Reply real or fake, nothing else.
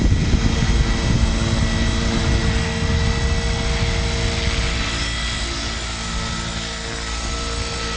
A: real